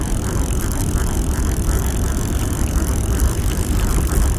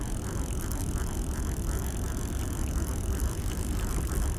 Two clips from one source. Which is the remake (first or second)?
first